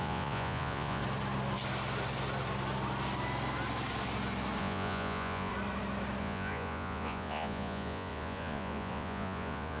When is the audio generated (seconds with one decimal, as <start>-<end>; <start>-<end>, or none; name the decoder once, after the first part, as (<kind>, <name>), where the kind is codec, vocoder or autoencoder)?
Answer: 0.0-1.0 (vocoder, Vocos); 4.6-5.5; 6.2-9.8